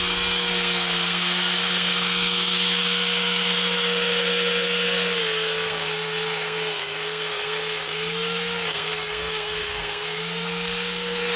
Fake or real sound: fake